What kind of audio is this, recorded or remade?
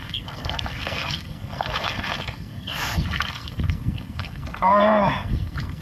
remade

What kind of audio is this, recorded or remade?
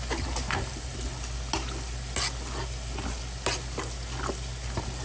recorded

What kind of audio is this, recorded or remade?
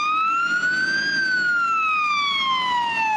recorded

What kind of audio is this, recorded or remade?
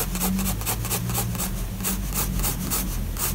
recorded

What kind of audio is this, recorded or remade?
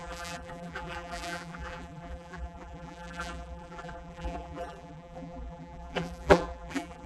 remade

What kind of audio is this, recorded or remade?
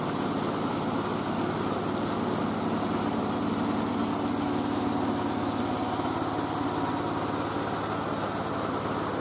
recorded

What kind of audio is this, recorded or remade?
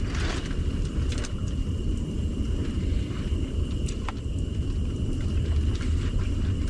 recorded